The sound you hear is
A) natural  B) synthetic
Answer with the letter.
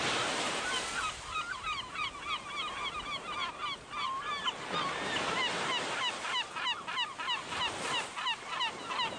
A